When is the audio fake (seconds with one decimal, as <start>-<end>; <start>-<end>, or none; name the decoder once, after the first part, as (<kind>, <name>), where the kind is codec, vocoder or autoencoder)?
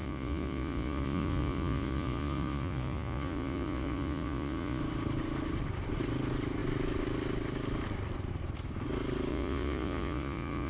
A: 0.0-4.8 (vocoder, Vocos); 9.3-10.7